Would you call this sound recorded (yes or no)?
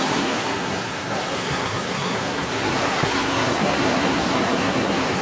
no